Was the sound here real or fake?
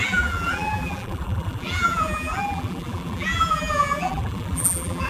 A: fake